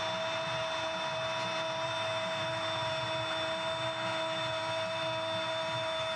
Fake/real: real